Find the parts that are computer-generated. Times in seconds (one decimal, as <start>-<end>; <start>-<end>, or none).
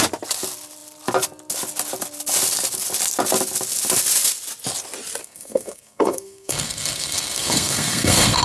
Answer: 5.2-8.4